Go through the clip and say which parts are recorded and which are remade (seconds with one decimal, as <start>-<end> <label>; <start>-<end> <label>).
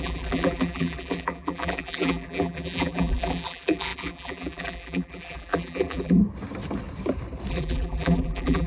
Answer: 0.0-6.2 remade; 6.2-7.5 recorded; 7.5-8.7 remade